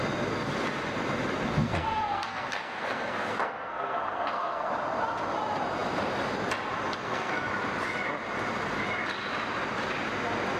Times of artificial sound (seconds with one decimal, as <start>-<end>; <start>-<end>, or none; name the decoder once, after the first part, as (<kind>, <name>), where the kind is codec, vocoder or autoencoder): 1.6-4.7 (codec, SNAC); 7.0-7.5

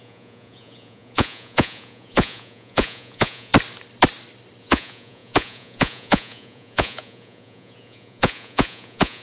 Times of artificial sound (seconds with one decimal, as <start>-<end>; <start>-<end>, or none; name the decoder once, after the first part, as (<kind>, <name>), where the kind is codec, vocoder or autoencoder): 0.0-3.5 (vocoder, Vocos); 4.6-9.2

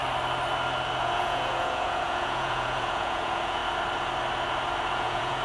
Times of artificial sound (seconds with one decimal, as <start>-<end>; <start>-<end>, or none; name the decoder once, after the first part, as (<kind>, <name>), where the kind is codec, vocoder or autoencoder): 1.0-3.6 (vocoder, Vocos); 4.9-5.4

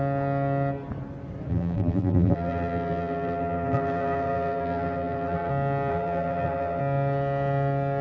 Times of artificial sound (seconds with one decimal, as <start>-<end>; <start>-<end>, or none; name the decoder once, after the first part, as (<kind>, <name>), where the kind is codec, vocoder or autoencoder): 1.5-5.5 (vocoder, BigVGAN v2); 5.9-6.8

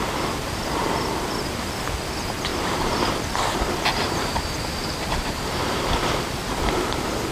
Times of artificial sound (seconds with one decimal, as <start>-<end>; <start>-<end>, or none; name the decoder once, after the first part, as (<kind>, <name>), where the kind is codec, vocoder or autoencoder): 2.5-7.3 (vocoder, BigVGAN v2)

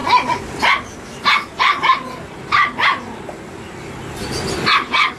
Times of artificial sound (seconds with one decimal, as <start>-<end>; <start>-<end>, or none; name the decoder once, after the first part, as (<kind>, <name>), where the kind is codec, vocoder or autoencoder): none

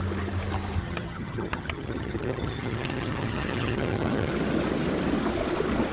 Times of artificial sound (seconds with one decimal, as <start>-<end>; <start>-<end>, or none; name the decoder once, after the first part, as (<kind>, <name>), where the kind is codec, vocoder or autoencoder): 0.8-4.3 (vocoder, HiFi-GAN)